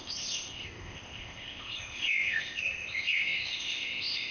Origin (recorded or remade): remade